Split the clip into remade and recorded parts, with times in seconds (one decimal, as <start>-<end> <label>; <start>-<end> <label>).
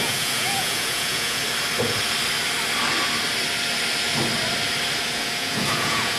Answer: 0.0-1.4 remade; 1.4-5.1 recorded; 5.1-6.2 remade